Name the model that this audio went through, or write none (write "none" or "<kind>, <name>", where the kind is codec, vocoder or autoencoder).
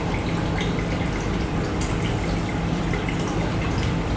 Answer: none